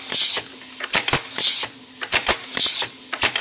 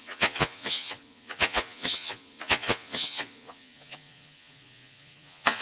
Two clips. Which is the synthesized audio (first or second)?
second